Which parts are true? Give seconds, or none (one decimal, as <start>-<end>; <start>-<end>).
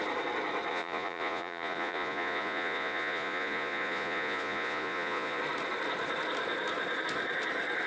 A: 0.0-0.7; 5.4-7.9